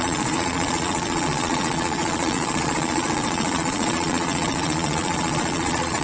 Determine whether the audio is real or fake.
fake